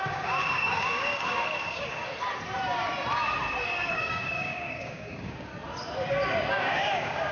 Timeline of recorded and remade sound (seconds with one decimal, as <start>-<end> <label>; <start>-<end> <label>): 0.0-2.0 remade; 2.0-3.9 recorded; 3.9-5.5 remade; 5.5-6.5 recorded; 6.5-7.3 remade